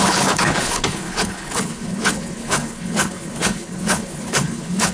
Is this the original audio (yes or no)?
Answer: no